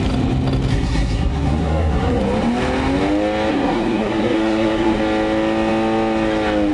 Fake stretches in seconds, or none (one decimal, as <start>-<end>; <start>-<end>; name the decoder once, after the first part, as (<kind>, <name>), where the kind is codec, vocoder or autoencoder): 0.7-2.2 (codec, SNAC); 3.5-5.0